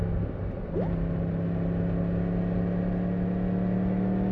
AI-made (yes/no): no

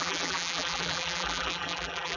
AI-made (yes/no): yes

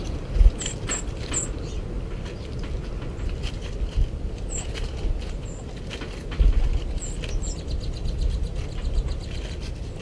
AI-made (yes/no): no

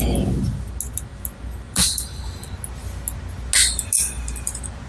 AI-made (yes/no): no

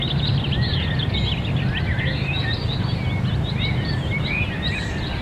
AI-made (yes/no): no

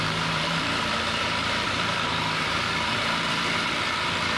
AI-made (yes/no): yes